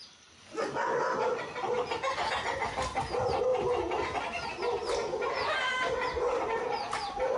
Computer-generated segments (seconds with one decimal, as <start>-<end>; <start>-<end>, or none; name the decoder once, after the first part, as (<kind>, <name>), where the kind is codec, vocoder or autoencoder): none

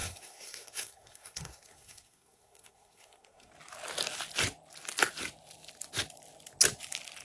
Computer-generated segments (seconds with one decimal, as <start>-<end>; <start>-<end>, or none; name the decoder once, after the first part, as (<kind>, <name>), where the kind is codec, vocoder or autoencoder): 0.0-3.5 (codec, SNAC)

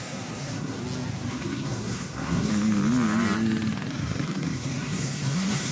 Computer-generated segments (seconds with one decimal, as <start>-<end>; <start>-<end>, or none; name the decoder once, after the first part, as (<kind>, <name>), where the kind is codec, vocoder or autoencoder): 0.0-0.8 (codec, SNAC); 1.3-2.5; 3.9-5.7

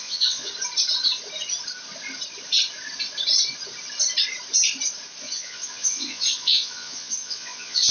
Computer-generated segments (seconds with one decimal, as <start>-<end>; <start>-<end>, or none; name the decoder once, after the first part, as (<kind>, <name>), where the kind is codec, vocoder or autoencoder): 0.0-0.5 (vocoder, Vocos); 5.2-7.9

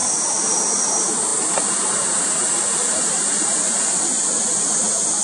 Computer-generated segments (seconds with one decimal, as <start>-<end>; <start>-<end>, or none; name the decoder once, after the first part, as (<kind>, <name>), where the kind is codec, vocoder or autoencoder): none

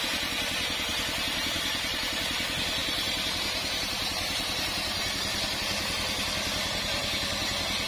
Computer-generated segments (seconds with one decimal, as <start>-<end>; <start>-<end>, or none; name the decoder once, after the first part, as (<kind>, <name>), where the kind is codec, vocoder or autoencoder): 0.9-2.2 (vocoder, BigVGAN v2); 2.8-5.6

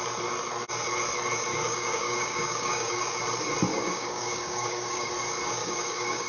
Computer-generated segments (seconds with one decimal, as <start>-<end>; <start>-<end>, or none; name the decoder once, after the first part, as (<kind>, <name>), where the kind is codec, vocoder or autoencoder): 1.5-3.0 (codec, DAC); 3.7-5.1; 5.6-6.3